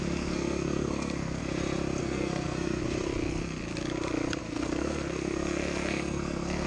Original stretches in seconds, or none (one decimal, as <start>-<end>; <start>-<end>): 1.4-2.0; 2.8-4.4